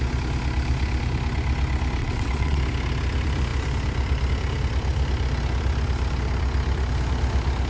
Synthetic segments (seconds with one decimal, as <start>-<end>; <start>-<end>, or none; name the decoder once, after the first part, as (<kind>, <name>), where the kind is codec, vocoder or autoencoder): 2.0-2.6 (vocoder, WaveNeXt)